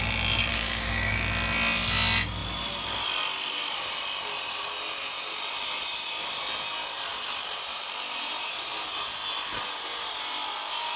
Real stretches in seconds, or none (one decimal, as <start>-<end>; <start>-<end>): 0.0-0.5; 1.1-11.0